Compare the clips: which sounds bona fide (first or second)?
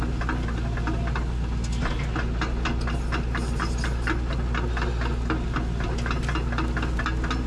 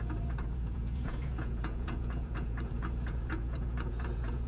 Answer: first